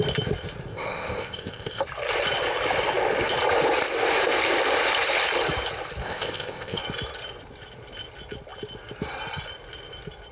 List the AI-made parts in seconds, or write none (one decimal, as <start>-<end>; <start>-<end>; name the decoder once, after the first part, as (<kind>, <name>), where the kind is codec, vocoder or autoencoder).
0.7-1.8 (codec, ZipCodec); 6.0-6.8